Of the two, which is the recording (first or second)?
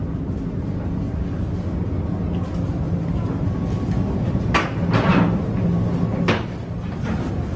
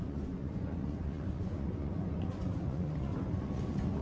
first